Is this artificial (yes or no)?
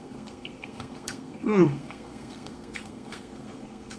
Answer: yes